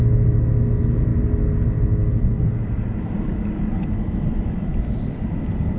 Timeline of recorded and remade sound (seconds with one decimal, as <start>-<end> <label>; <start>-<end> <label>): 0.0-5.8 recorded